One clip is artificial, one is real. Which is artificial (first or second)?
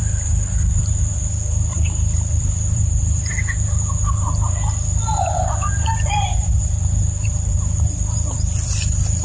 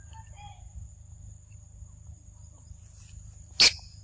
first